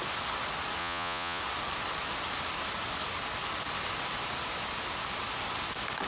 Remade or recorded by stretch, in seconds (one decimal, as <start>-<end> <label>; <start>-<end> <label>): 0.0-0.8 recorded; 0.8-1.4 remade; 1.4-6.1 recorded